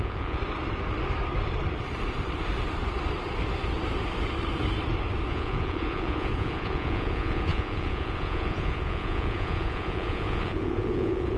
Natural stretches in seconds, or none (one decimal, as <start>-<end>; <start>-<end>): 0.4-5.3